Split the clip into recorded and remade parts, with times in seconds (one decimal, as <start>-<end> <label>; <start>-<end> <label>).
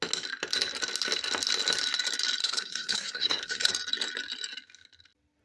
0.0-2.4 recorded; 2.4-3.7 remade; 3.7-5.4 recorded